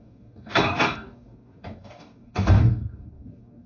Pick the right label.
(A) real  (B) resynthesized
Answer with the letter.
B